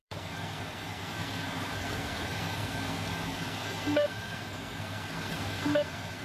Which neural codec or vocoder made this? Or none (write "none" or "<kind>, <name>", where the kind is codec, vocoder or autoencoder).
codec, SNAC